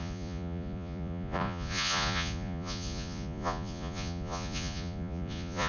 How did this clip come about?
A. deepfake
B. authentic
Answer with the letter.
A